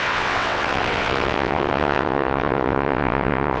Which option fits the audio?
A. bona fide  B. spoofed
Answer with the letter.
B